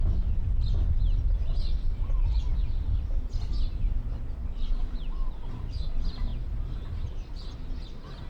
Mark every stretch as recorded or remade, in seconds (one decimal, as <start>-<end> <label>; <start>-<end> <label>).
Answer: 0.0-4.4 recorded; 4.4-5.8 remade; 5.8-8.3 recorded